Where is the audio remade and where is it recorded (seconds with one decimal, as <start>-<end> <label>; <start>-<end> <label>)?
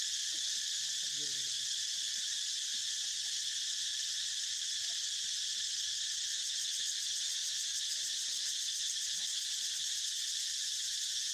0.0-2.8 recorded; 2.8-3.5 remade; 3.5-4.5 recorded; 4.5-6.7 remade; 6.7-7.7 recorded; 7.7-10.6 remade; 10.6-11.3 recorded